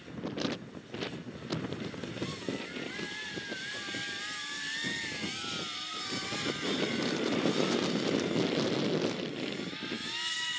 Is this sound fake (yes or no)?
no